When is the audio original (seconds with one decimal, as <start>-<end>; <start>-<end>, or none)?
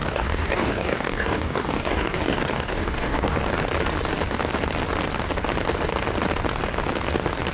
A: 3.4-7.5